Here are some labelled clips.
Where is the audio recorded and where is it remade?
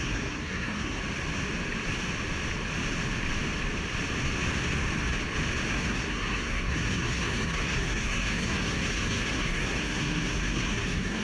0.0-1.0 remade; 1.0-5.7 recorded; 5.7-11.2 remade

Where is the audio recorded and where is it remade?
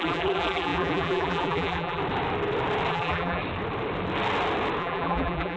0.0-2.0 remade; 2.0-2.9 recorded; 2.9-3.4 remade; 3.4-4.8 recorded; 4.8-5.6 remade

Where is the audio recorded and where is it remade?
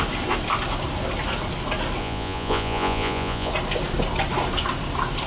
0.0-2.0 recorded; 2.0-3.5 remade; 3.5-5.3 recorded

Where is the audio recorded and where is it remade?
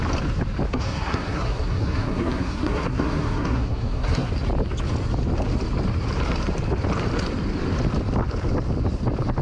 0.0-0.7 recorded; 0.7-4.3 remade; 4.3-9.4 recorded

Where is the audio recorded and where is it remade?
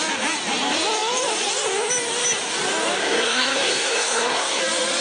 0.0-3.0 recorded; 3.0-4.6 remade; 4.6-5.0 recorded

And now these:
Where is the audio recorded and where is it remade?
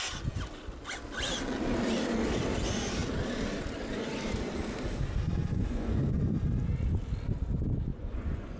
0.0-5.4 recorded; 5.4-6.2 remade; 6.2-7.9 recorded; 7.9-8.6 remade